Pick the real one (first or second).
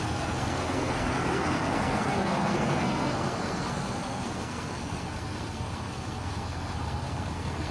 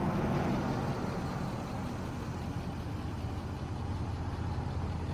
second